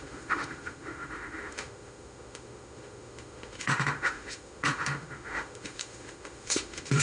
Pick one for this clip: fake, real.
fake